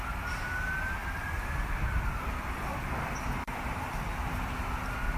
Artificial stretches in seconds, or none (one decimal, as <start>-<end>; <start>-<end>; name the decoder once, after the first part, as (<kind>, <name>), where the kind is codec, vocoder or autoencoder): 1.0-4.1 (vocoder, BigVGAN v2)